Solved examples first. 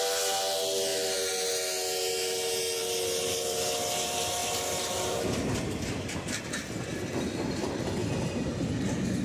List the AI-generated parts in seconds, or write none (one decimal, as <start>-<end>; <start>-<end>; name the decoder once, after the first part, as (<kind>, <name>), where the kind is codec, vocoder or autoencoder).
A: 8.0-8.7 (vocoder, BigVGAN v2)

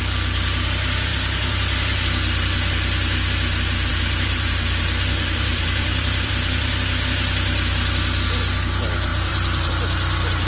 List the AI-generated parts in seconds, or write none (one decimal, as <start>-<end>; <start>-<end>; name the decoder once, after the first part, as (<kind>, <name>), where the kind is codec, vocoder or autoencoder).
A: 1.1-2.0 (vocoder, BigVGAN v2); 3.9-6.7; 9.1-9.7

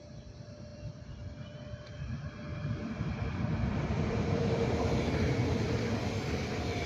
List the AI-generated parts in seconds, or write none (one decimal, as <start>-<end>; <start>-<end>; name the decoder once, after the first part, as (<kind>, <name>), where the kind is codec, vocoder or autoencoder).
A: 0.7-2.2 (vocoder, BigVGAN v2); 2.6-6.9

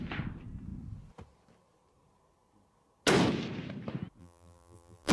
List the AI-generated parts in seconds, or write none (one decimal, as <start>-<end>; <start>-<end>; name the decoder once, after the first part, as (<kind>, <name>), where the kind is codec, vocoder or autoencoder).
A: 4.2-5.1 (vocoder, BigVGAN v2)

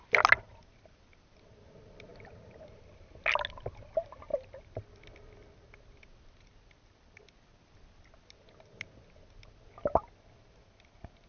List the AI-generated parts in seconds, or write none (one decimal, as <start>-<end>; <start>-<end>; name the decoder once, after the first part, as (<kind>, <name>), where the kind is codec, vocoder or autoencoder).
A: 2.1-2.9 (vocoder, BigVGAN v2); 4.3-4.8

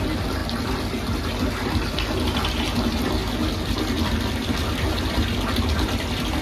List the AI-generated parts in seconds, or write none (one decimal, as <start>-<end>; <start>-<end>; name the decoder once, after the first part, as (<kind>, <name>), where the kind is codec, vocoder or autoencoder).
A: none